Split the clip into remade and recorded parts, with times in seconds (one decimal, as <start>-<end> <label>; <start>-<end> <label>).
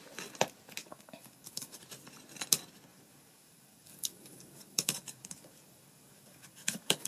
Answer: 0.0-0.8 recorded; 0.8-1.8 remade; 1.8-2.9 recorded; 2.9-7.1 remade